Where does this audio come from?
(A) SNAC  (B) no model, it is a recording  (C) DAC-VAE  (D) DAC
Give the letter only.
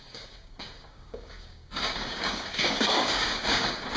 D